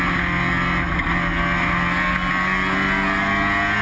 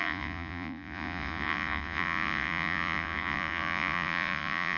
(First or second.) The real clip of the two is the first